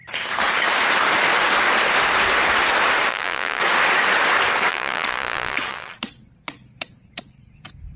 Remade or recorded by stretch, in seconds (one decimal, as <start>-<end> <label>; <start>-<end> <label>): 0.0-3.1 recorded; 3.1-3.6 remade; 3.6-4.7 recorded; 4.7-7.5 remade; 7.5-8.0 recorded